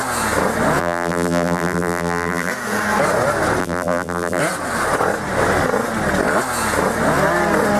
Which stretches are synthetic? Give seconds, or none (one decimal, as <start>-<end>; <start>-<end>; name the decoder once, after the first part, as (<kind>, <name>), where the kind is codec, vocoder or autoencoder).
0.8-2.5 (vocoder, BigVGAN v2); 3.6-4.4

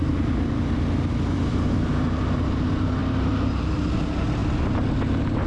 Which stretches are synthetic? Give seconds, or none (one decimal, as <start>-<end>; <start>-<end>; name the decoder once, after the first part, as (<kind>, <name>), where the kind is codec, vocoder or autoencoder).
0.0-0.5 (vocoder, BigVGAN v2); 1.5-2.6

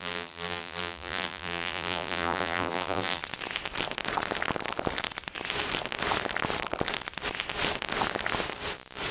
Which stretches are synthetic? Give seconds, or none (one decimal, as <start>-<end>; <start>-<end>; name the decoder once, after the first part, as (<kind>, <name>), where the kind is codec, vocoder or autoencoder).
0.0-3.2 (vocoder, BigVGAN v2)

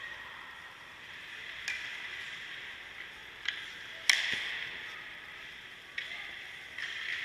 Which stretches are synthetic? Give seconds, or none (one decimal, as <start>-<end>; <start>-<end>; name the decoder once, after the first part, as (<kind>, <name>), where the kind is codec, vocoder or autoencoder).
0.0-3.2 (vocoder, BigVGAN v2); 5.0-7.2

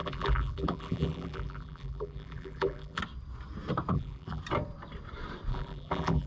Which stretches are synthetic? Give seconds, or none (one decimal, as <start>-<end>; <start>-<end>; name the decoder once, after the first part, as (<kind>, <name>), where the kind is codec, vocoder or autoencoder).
0.0-3.0 (vocoder, BigVGAN v2); 3.9-4.4; 5.5-6.3

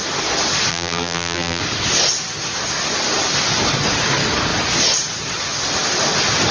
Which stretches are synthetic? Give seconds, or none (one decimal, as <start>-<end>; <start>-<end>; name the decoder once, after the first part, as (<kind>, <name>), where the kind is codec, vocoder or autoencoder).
0.7-1.6 (vocoder, BigVGAN v2)

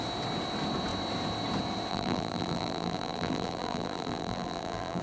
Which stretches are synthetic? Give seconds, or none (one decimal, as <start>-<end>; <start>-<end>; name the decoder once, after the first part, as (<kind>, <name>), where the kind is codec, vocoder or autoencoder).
1.9-5.0 (vocoder, BigVGAN v2)